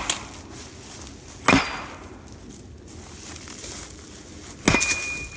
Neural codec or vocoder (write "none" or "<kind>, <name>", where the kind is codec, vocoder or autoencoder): none